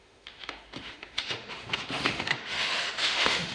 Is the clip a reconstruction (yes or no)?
yes